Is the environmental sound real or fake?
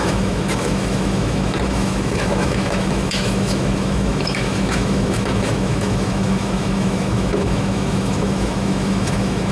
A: fake